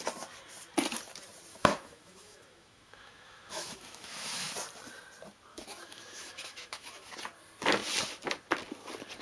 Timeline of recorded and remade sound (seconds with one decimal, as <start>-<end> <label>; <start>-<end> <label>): 0.0-1.5 recorded; 1.5-4.5 remade; 4.5-5.5 recorded; 5.5-7.1 remade; 7.1-9.2 recorded